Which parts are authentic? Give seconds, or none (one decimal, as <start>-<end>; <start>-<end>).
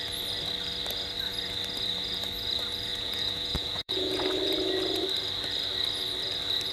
0.0-2.9; 4.2-6.7